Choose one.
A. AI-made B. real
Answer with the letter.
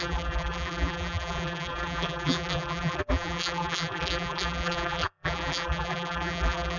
A